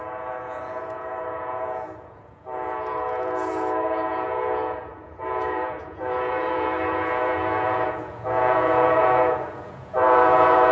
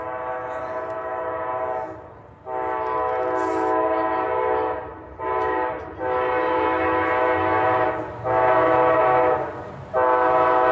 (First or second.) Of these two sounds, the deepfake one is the first